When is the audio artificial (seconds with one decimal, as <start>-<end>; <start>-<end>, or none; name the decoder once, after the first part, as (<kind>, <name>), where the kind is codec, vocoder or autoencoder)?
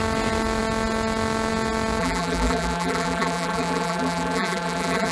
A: 2.0-5.1 (vocoder, BigVGAN v2)